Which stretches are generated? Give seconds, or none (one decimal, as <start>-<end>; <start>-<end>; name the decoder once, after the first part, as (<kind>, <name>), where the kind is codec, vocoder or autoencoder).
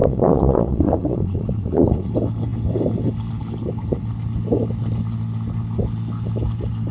0.0-2.1 (vocoder, Vocos)